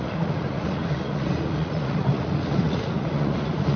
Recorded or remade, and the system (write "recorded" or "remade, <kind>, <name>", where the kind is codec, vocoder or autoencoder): remade, vocoder, Vocos